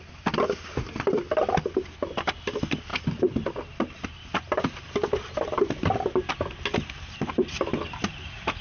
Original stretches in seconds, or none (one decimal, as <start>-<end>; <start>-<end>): 0.0-8.6